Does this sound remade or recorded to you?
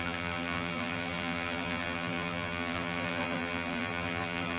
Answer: remade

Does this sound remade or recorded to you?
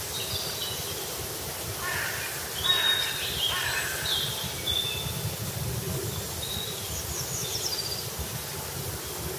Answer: recorded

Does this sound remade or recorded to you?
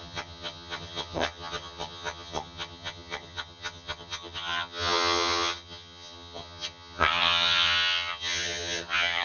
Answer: remade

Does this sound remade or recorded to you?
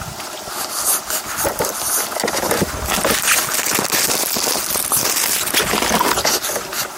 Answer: recorded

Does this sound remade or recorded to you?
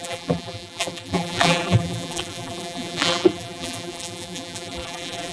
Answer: remade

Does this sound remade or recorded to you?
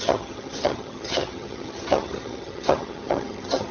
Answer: remade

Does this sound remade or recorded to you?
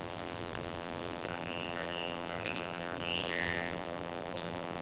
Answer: remade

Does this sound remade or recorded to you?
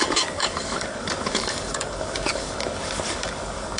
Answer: remade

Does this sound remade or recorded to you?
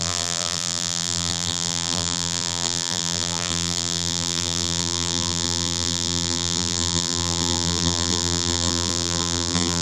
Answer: remade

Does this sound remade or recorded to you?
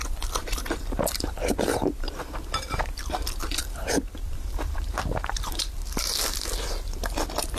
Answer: remade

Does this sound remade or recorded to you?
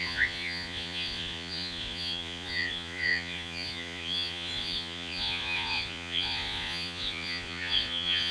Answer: remade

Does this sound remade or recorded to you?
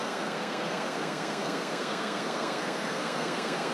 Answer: remade